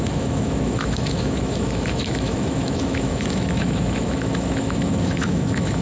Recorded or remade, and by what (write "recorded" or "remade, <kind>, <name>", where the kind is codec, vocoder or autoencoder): remade, autoencoder, DAC-VAE